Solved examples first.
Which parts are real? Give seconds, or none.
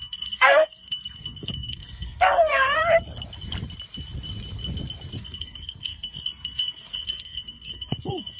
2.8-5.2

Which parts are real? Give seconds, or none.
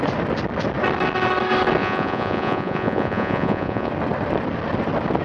0.0-1.8; 3.9-5.2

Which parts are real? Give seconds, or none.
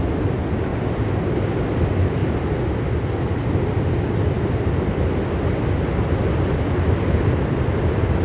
0.0-8.2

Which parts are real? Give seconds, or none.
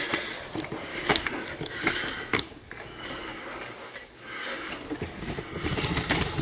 0.0-0.9; 4.7-6.4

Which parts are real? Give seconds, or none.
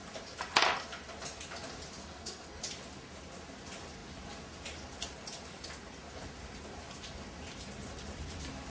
0.0-2.0; 2.6-8.7